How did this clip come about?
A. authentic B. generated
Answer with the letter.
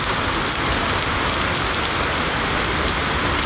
A